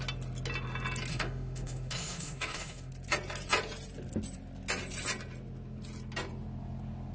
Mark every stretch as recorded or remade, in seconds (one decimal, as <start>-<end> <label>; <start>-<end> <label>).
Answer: 0.0-1.1 recorded; 1.1-2.9 remade; 2.9-7.1 recorded